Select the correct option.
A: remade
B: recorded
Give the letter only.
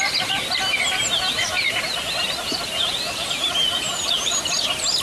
B